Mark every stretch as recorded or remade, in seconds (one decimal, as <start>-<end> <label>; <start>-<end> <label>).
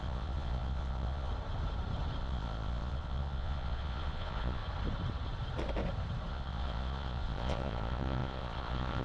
0.0-1.3 remade; 1.3-2.2 recorded; 2.2-4.6 remade; 4.6-6.3 recorded; 6.3-9.0 remade